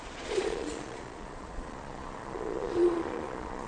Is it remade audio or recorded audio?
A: remade